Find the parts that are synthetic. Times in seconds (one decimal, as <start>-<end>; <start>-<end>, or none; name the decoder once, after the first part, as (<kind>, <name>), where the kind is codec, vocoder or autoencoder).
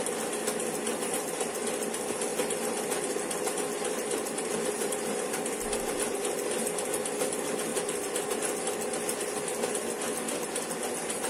2.3-6.2 (vocoder, BigVGAN v2); 7.7-8.6